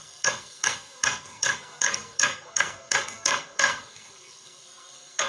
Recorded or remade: remade